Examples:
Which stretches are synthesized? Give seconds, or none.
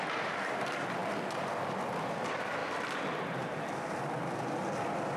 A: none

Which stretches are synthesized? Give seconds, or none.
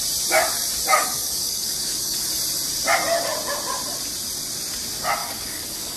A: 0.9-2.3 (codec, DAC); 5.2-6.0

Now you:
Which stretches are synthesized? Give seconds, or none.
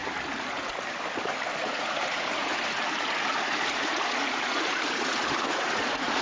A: 1.6-6.2 (vocoder, Vocos)